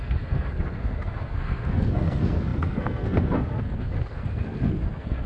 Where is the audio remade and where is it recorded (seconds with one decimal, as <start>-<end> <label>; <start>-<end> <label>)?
0.0-5.3 remade